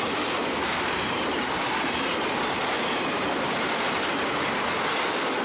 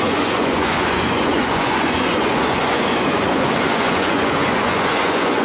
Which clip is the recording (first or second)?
first